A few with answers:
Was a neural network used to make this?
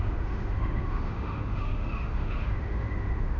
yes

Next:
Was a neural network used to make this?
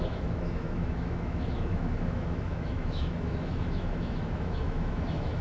yes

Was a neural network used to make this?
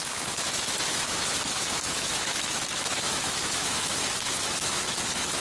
yes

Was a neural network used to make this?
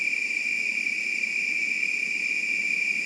no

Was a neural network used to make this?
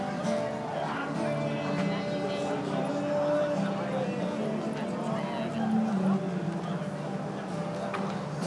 no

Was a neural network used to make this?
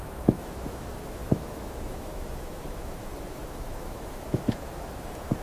yes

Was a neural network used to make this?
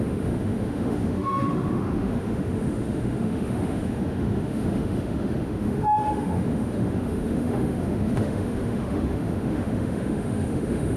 yes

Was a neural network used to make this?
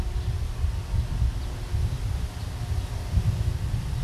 no